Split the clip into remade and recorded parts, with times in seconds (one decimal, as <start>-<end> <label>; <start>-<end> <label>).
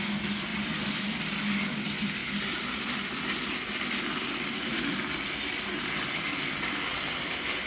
0.0-0.5 recorded; 0.5-1.2 remade; 1.2-6.9 recorded; 6.9-7.7 remade